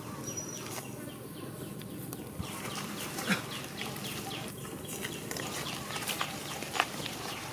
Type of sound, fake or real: real